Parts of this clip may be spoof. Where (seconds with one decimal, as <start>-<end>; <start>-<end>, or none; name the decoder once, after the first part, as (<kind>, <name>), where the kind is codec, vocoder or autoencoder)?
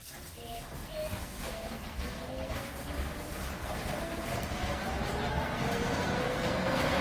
0.0-4.8 (codec, SNAC); 5.3-7.0